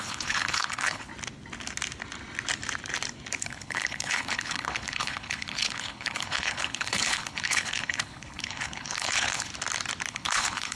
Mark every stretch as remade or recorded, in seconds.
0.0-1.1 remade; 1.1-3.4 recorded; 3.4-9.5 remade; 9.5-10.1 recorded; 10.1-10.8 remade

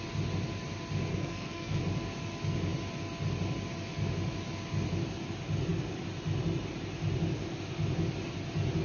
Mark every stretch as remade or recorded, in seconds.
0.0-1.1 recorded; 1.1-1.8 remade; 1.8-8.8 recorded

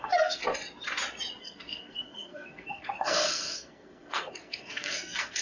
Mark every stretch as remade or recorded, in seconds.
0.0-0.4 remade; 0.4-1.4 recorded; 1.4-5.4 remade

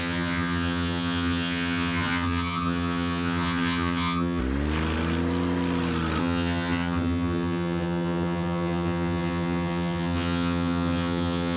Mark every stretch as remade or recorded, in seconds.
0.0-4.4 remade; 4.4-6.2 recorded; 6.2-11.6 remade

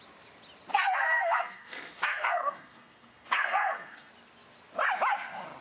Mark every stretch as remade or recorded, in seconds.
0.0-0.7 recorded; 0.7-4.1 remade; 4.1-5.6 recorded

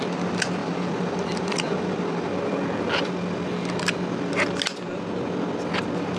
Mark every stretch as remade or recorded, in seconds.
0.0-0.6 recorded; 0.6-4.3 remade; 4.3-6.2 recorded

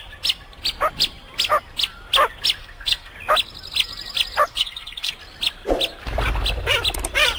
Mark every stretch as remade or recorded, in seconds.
0.0-2.6 recorded; 2.6-3.1 remade; 3.1-4.5 recorded; 4.5-5.1 remade; 5.1-7.4 recorded

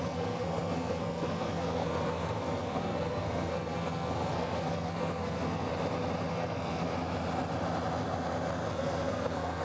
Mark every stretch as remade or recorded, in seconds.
0.0-5.7 remade; 5.7-6.3 recorded; 6.3-6.9 remade; 6.9-8.7 recorded; 8.7-9.6 remade